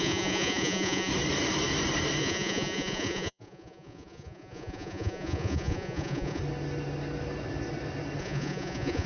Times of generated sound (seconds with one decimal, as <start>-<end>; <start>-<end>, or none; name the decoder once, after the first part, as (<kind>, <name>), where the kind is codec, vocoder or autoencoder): 0.0-1.1 (vocoder, Vocos); 2.2-6.4; 8.2-9.1